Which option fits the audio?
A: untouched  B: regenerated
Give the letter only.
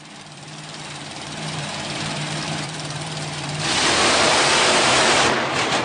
B